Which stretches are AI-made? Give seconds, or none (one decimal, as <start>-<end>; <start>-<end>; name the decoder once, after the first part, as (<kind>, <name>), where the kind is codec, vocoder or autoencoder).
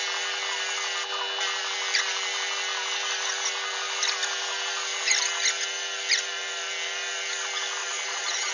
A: 7.8-8.5 (vocoder, Vocos)